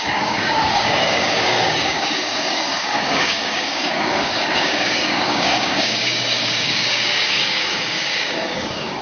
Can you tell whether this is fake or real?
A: fake